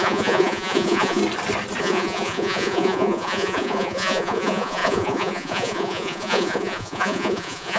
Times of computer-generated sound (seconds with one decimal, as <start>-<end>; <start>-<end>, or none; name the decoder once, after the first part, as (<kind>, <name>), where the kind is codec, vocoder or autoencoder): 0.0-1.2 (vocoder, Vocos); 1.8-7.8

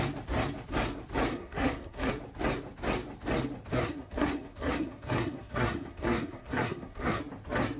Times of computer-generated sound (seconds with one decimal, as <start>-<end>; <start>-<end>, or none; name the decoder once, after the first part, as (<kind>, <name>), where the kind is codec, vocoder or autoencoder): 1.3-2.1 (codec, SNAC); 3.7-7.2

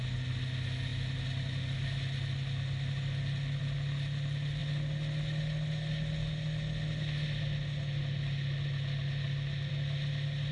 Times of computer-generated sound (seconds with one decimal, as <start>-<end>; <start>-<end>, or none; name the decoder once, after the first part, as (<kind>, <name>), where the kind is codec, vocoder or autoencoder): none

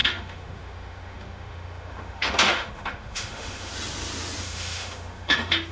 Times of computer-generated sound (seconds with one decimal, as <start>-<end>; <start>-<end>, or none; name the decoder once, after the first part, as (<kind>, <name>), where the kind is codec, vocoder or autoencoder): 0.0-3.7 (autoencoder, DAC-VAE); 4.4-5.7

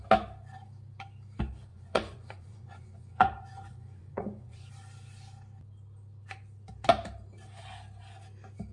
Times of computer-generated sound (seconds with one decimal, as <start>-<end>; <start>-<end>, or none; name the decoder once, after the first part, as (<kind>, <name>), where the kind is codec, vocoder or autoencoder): 1.7-4.7 (vocoder, Vocos)

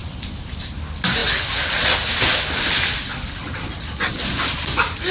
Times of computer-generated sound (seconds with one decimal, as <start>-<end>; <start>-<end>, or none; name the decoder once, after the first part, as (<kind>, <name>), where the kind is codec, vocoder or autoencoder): 0.0-0.6 (vocoder, BigVGAN v2)

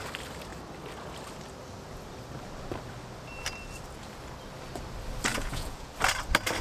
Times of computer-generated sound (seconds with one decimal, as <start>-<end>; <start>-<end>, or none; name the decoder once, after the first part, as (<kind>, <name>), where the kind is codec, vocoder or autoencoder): 5.3-5.9 (vocoder, Vocos)